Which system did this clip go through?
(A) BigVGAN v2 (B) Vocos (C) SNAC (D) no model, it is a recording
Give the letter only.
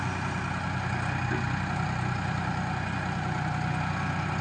D